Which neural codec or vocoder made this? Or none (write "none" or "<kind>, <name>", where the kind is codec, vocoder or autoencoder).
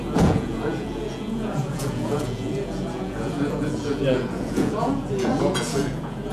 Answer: vocoder, Vocos